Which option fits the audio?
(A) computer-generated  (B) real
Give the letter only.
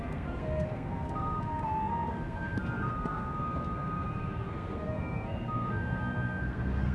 A